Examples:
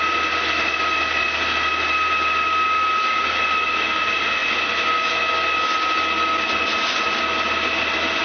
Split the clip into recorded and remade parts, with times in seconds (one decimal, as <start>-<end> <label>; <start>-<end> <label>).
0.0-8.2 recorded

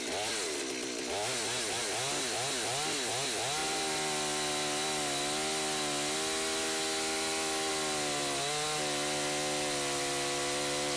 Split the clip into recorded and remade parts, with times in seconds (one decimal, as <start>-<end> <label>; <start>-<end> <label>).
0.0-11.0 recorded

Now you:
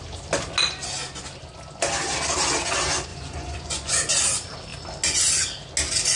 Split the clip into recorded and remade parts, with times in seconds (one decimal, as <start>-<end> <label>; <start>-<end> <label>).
0.0-3.1 recorded; 3.1-3.9 remade; 3.9-6.2 recorded

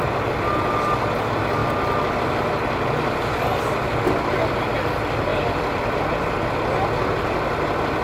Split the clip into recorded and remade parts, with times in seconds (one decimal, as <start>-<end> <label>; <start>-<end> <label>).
0.0-8.0 recorded